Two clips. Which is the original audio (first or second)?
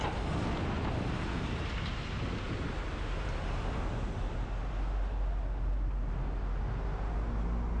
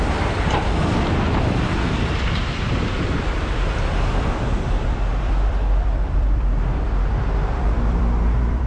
first